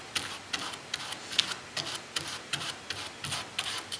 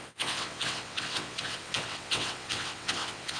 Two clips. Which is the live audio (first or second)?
first